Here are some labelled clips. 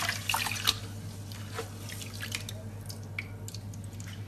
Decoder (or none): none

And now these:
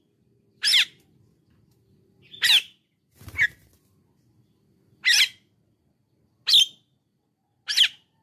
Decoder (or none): none